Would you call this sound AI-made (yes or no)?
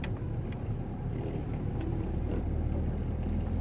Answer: yes